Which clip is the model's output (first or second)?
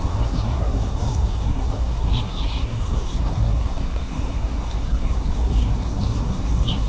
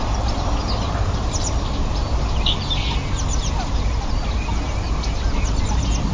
first